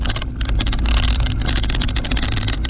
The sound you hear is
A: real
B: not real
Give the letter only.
A